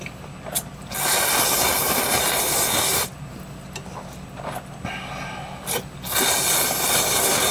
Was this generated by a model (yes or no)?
no